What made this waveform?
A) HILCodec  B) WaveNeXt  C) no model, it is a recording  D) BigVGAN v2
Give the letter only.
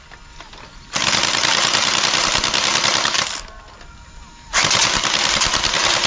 C